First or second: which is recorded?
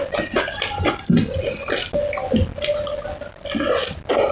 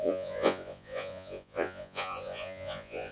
first